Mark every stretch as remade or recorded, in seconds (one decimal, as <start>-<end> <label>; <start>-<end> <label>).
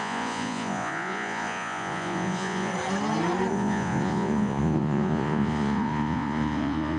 0.0-2.7 remade; 2.7-3.5 recorded; 3.5-7.0 remade